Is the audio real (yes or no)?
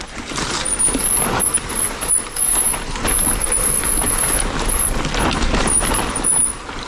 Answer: yes